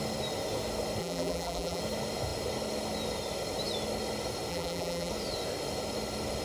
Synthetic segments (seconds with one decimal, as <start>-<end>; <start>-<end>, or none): 1.0-1.8; 4.5-5.1

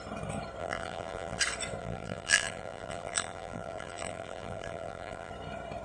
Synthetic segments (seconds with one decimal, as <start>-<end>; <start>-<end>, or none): 0.6-1.4; 1.8-5.3

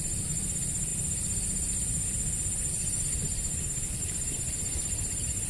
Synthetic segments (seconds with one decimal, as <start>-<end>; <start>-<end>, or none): 0.0-0.9; 2.7-5.5

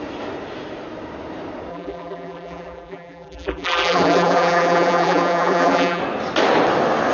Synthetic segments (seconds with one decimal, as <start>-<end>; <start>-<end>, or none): 1.7-6.0

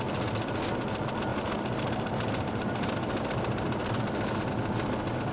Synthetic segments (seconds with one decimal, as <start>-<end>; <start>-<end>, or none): 1.3-4.5